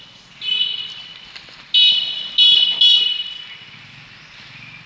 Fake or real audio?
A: real